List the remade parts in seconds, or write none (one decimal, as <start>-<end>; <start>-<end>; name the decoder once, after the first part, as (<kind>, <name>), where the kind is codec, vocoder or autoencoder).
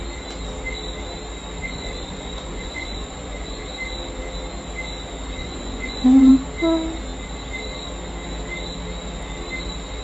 1.6-3.6 (vocoder, Vocos); 5.4-6.3